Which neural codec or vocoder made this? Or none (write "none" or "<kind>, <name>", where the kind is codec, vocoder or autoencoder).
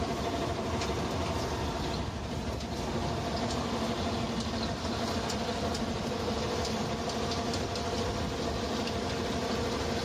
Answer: none